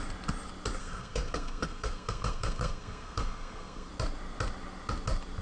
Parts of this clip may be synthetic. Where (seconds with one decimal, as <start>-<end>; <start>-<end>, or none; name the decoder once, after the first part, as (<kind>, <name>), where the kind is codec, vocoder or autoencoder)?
0.8-3.9 (codec, SNAC)